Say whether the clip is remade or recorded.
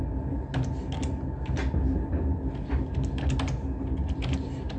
recorded